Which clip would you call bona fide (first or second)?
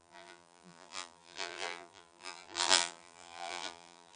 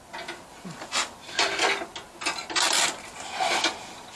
second